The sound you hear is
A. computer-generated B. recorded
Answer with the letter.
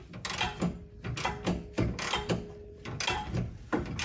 B